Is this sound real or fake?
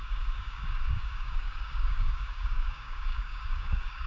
fake